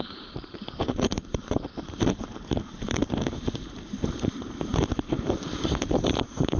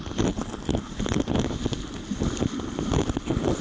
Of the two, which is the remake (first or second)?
first